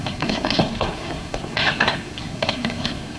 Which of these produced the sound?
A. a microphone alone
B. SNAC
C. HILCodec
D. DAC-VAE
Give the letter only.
B